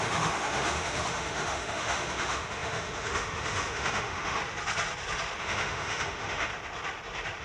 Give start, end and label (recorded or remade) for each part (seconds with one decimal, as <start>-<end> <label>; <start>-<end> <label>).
0.0-4.4 remade; 4.4-5.4 recorded; 5.4-6.5 remade; 6.5-7.4 recorded